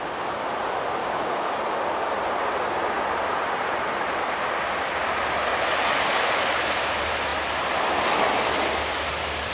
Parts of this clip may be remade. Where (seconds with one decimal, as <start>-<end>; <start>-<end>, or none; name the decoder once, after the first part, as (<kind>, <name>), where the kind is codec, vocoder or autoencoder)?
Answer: 1.0-1.6 (codec, DAC)